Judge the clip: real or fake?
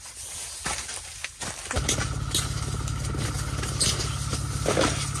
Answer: real